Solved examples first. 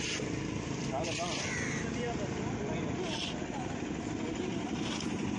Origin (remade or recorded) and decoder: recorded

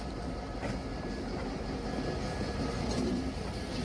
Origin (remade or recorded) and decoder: recorded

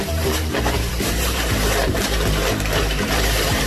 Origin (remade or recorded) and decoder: remade, vocoder, BigVGAN v2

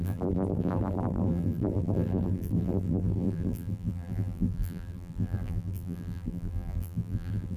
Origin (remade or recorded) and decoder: remade, vocoder, BigVGAN v2